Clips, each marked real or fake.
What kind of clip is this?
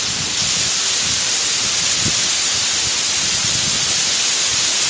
real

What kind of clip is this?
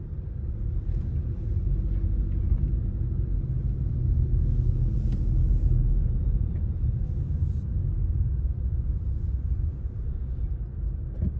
real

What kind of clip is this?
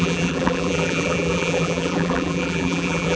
fake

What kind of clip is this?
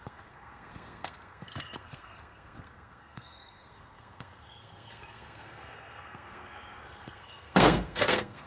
fake